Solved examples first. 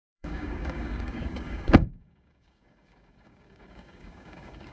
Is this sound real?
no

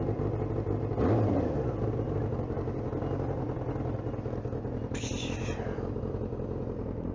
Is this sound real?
yes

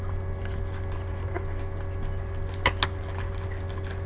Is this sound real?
yes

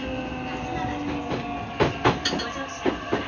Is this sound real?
yes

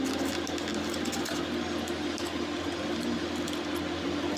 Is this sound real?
yes